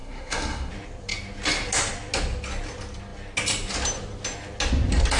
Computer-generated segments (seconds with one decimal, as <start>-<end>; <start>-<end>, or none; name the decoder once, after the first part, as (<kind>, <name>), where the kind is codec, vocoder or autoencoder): 0.0-0.7 (codec, SNAC)